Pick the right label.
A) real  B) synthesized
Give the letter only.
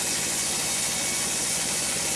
B